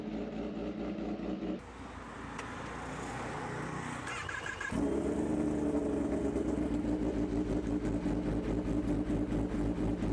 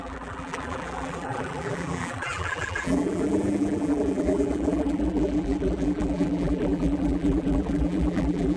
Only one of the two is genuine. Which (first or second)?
first